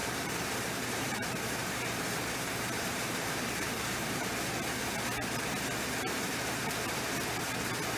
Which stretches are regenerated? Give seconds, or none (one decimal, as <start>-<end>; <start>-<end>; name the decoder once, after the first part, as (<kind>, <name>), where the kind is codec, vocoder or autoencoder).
0.0-4.3 (vocoder, BigVGAN v2)